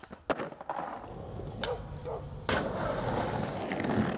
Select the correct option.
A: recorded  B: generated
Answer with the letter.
A